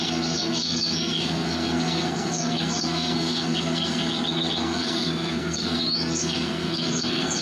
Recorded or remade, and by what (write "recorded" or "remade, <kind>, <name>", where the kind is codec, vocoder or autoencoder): remade, codec, SNAC